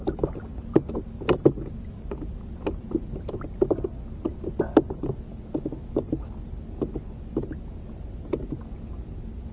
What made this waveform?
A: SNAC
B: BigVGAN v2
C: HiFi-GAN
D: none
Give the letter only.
D